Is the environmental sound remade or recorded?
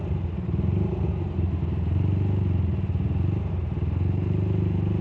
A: recorded